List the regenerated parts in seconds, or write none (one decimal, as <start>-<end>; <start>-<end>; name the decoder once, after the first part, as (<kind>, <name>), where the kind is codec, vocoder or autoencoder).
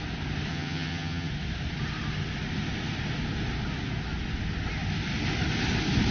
0.5-1.3 (vocoder, HiFi-GAN)